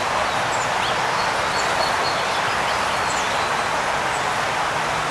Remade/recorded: recorded